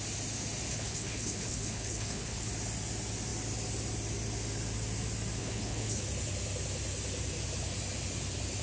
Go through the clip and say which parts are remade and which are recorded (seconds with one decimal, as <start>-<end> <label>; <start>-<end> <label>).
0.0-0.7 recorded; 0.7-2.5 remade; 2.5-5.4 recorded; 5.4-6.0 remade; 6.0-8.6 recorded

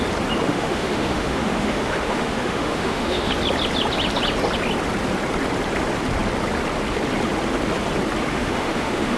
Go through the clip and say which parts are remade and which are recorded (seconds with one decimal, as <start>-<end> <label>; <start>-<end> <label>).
0.0-0.5 recorded; 0.5-3.3 remade; 3.3-8.3 recorded; 8.3-9.2 remade

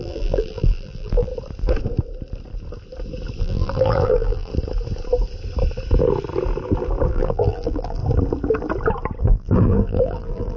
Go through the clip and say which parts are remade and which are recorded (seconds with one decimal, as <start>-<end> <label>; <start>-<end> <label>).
0.0-1.3 remade; 1.3-3.4 recorded; 3.4-4.5 remade; 4.5-7.1 recorded; 7.1-8.0 remade; 8.0-9.2 recorded; 9.2-10.6 remade